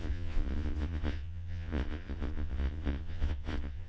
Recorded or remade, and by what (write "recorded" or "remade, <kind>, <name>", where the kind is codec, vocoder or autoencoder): remade, vocoder, Vocos